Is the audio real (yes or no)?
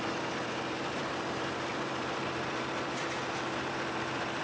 no